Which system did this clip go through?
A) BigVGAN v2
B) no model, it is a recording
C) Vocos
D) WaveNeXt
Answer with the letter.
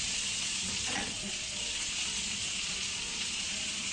C